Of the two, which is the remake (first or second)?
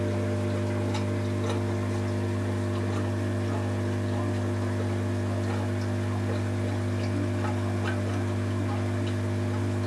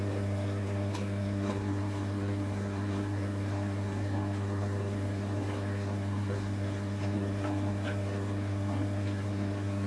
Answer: second